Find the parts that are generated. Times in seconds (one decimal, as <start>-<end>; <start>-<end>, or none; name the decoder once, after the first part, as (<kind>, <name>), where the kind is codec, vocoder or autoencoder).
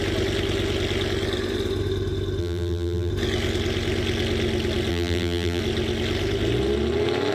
2.4-3.1 (vocoder, BigVGAN v2); 4.9-5.6